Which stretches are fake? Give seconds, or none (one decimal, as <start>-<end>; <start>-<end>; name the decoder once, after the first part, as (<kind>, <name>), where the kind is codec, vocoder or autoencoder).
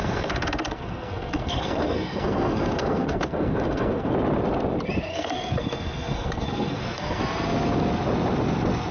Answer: 0.0-4.1 (codec, SNAC); 5.1-7.2